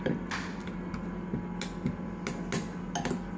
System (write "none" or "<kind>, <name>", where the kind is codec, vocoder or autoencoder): none